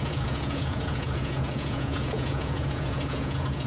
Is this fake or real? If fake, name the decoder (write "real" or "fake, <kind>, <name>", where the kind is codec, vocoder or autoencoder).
fake, vocoder, Vocos